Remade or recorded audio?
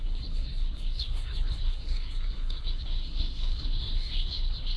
remade